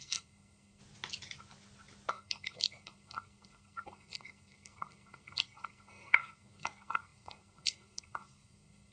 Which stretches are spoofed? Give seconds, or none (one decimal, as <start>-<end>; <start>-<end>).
0.0-0.8; 2.1-8.9